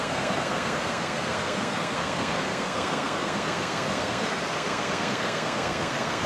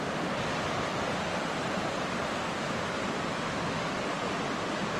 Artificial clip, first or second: first